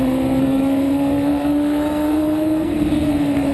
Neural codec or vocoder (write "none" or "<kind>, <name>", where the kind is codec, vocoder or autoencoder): codec, SNAC